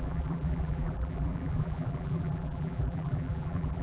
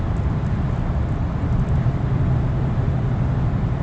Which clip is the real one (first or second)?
second